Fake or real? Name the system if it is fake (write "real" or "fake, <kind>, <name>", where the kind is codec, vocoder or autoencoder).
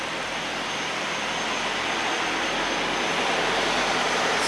real